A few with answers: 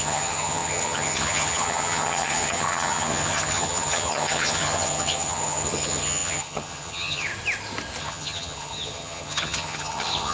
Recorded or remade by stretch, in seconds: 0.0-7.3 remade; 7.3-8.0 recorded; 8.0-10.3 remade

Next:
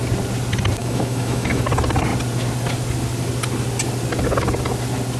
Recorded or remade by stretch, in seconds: 0.0-0.8 recorded; 0.8-1.6 remade; 1.6-5.2 recorded

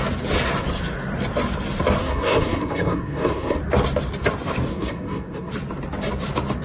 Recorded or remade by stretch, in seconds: 0.0-2.0 recorded; 2.0-3.6 remade; 3.6-4.7 recorded; 4.7-5.5 remade; 5.5-6.6 recorded

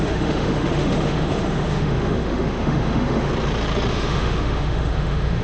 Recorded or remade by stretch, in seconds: 0.0-3.3 remade; 3.3-3.9 recorded; 3.9-5.4 remade

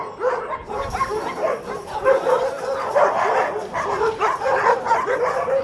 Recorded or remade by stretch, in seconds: 0.0-1.1 recorded; 1.1-3.3 remade; 3.3-5.6 recorded

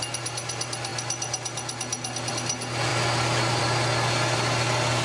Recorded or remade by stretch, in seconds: 0.0-5.0 recorded